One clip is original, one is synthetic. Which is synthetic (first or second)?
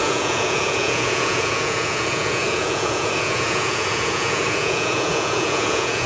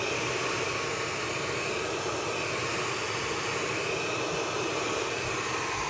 first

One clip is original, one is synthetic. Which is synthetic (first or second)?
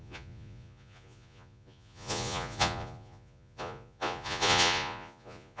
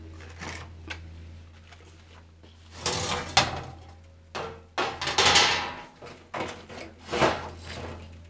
first